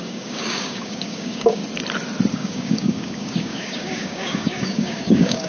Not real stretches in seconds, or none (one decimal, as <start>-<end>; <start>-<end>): 0.0-1.6; 2.3-5.5